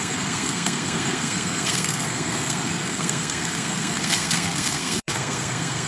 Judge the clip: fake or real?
fake